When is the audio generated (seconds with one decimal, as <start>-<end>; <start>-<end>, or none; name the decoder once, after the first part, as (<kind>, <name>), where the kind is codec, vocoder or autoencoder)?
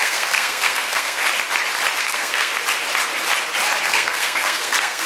0.0-1.2 (codec, SNAC); 2.0-2.5; 3.8-5.1